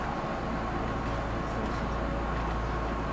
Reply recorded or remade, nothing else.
recorded